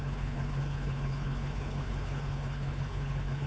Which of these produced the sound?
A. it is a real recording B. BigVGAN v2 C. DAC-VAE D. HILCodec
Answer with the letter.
D